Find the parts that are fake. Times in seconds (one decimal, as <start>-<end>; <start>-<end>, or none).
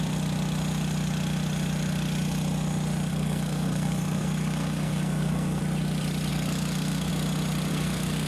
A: 3.1-5.6; 6.3-7.1; 7.7-8.3